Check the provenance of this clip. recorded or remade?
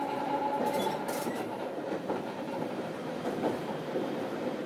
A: remade